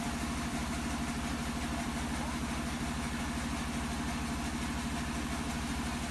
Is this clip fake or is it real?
real